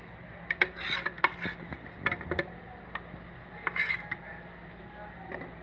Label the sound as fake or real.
real